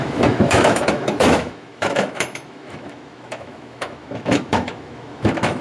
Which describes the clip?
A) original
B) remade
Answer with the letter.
B